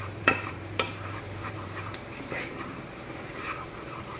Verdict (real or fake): fake